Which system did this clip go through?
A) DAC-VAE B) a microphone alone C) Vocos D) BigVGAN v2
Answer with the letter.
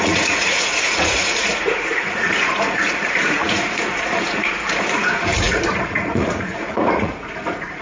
C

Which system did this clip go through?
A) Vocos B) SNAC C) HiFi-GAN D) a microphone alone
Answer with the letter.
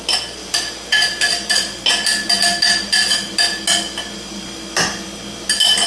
D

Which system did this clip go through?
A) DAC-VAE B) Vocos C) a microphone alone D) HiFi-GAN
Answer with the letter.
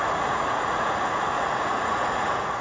B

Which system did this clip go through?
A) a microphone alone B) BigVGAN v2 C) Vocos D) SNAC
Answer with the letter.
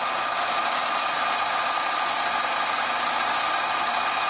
A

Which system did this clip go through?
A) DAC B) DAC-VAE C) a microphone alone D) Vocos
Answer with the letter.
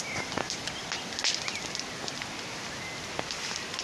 C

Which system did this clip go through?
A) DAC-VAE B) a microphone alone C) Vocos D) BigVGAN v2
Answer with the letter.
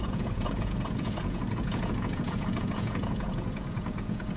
C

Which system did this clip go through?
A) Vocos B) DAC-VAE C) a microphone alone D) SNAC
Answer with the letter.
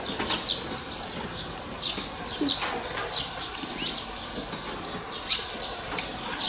C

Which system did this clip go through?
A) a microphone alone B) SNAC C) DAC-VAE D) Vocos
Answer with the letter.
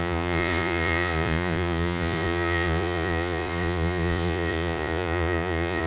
D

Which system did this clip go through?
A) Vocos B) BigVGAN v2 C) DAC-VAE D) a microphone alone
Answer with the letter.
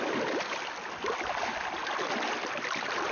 D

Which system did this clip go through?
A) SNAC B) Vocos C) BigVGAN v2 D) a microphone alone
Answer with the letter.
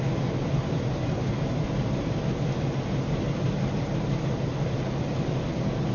D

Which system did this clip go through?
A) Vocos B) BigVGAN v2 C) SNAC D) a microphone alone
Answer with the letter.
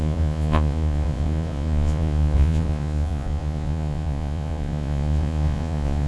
A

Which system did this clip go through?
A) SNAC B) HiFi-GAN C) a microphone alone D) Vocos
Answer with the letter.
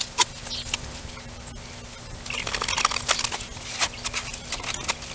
C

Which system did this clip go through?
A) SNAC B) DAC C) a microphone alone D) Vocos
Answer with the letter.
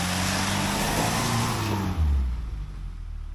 C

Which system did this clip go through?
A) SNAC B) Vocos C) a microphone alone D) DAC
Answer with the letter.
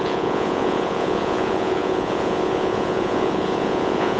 B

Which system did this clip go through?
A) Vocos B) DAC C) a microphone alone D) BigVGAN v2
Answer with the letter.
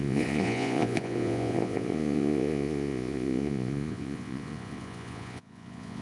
A